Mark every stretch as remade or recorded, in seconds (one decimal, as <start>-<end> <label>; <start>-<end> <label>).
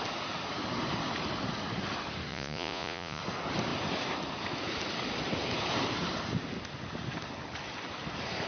0.0-2.3 recorded; 2.3-3.2 remade; 3.2-8.5 recorded